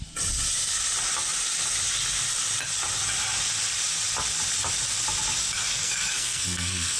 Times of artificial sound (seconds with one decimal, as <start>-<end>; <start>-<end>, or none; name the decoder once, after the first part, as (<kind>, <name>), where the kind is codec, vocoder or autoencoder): 5.7-7.0 (codec, SNAC)